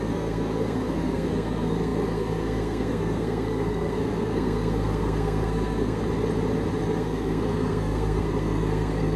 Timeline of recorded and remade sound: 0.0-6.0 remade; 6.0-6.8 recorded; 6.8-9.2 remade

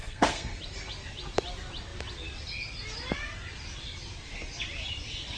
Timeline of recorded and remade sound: 0.0-0.6 remade; 0.6-5.4 recorded

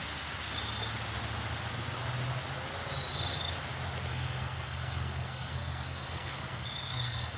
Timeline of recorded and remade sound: 0.0-4.1 recorded; 4.1-7.4 remade

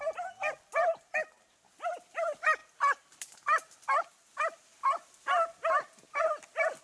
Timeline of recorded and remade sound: 0.0-6.8 recorded

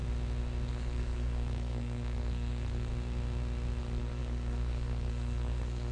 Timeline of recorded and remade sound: 0.0-0.7 recorded; 0.7-2.9 remade; 2.9-3.8 recorded; 3.8-5.9 remade